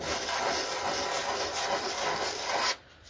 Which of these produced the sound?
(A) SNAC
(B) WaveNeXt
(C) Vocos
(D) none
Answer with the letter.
D